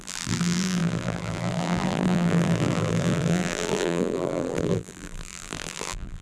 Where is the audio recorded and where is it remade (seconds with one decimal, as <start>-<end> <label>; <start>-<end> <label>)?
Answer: 0.0-6.2 remade